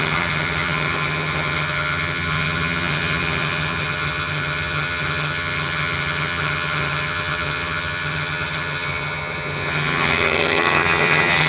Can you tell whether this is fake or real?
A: fake